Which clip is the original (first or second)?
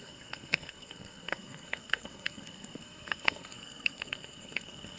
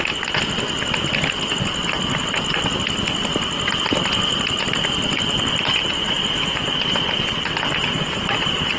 second